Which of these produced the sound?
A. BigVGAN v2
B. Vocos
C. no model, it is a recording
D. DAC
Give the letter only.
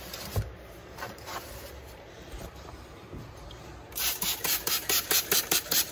A